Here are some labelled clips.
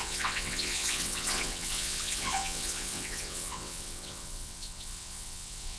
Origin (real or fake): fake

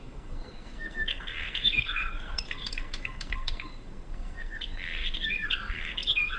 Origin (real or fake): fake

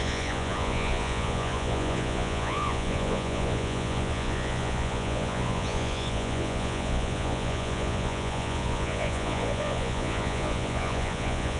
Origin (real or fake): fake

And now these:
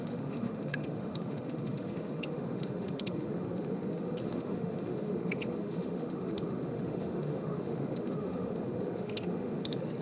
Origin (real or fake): fake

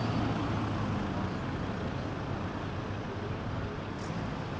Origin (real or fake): real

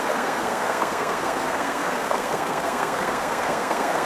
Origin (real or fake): fake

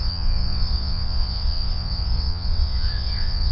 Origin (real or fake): fake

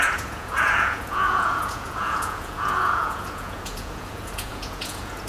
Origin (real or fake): fake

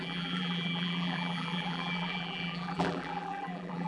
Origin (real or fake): fake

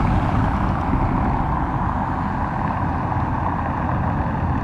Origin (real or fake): real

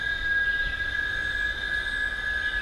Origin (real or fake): real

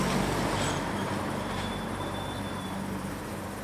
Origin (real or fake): fake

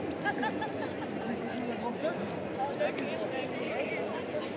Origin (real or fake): real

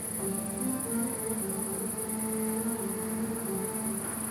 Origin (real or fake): real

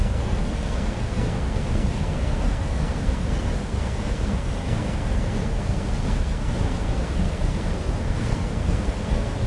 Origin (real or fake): fake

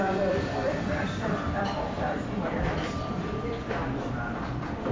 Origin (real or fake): fake